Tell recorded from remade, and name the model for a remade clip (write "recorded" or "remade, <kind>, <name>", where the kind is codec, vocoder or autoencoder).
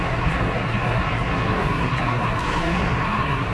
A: remade, codec, SNAC